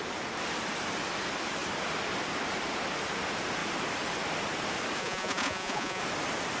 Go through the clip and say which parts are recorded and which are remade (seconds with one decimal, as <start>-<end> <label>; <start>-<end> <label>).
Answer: 0.0-5.0 recorded; 5.0-6.0 remade; 6.0-6.6 recorded